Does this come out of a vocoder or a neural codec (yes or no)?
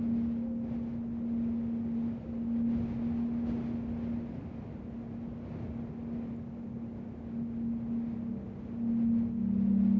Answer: no